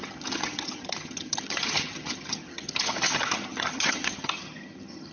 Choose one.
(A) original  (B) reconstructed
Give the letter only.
B